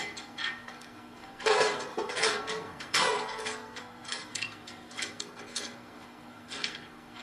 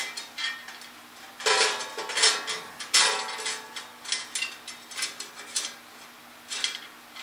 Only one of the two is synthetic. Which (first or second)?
first